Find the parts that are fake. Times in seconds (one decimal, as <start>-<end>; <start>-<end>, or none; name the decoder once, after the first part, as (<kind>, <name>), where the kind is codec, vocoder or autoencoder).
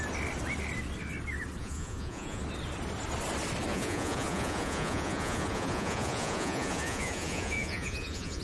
1.6-2.4 (vocoder, Vocos); 3.7-8.4